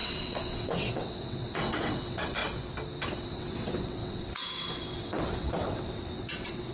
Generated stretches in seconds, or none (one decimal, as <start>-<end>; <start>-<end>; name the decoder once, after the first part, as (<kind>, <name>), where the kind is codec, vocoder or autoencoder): 0.0-2.4 (vocoder, WaveNeXt); 3.2-6.7